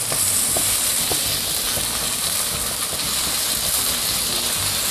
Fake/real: real